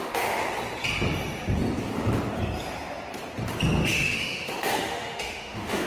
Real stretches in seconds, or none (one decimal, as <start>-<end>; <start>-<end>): 0.4-3.9